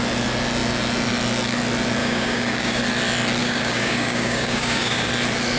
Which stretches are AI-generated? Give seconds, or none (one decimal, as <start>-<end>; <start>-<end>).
2.0-2.8; 3.4-5.1